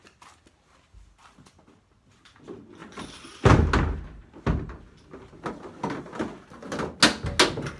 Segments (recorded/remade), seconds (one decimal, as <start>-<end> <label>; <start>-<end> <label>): 0.0-7.8 recorded